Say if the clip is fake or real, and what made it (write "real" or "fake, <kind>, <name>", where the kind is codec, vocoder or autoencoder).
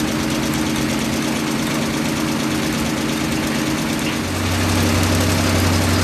real